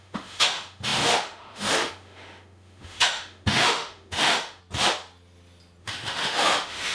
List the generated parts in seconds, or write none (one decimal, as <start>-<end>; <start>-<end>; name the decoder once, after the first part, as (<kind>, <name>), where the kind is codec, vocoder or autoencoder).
0.0-4.6 (autoencoder, DAC-VAE); 5.8-6.9